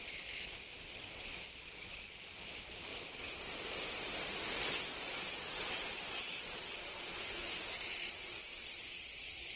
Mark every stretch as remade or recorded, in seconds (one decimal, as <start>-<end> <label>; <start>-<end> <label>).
0.0-2.9 remade; 2.9-4.9 recorded; 4.9-9.6 remade